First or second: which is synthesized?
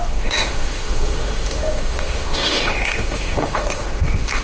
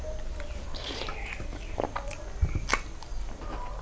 first